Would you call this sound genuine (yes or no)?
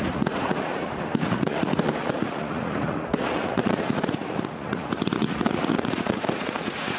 no